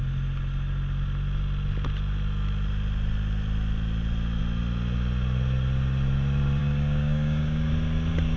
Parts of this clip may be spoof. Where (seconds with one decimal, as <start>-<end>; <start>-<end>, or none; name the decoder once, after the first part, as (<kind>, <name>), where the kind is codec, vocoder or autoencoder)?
6.6-7.7 (codec, DAC)